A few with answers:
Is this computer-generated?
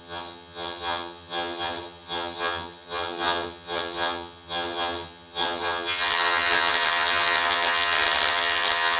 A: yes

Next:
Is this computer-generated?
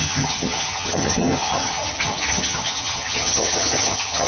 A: yes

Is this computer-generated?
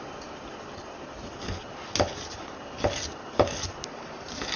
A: no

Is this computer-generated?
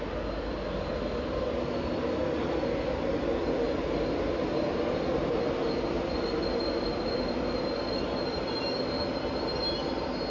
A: no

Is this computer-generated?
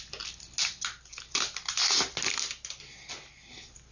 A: no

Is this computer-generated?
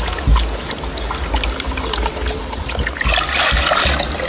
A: no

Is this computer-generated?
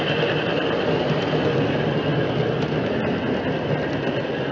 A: no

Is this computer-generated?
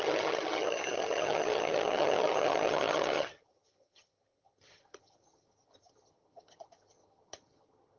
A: yes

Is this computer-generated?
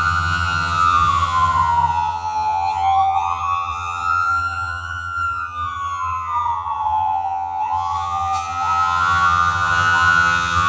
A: yes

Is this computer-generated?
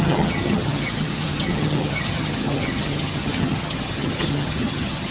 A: yes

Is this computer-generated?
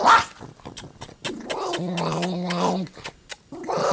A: no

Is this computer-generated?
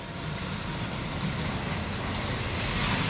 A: no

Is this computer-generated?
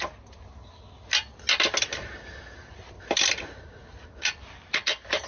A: no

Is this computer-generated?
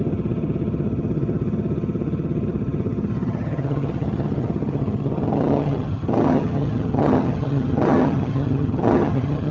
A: yes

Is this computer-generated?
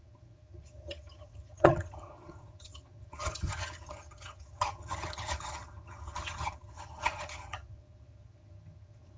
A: yes